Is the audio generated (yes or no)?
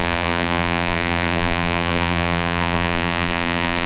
yes